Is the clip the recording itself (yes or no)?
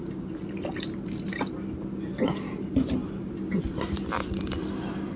yes